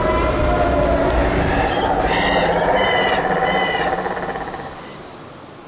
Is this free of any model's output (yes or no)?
yes